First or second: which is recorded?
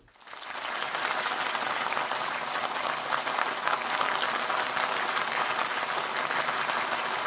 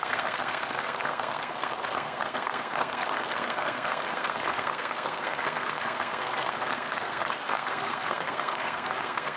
first